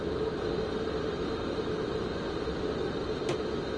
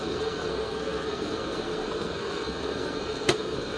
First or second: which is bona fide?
first